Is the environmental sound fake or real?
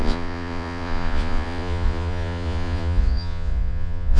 fake